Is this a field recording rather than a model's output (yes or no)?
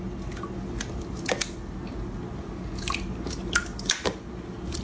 yes